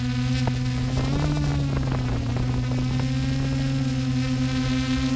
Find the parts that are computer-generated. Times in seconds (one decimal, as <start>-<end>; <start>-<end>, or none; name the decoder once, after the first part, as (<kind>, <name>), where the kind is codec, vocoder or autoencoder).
none